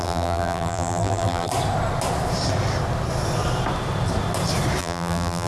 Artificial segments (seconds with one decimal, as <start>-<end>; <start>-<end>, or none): 0.0-1.5; 4.8-5.5